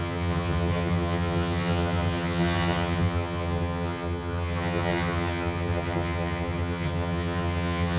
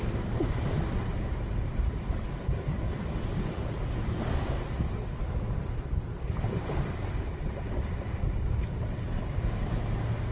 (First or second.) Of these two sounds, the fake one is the first